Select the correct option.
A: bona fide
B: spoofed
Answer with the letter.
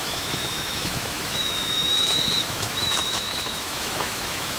B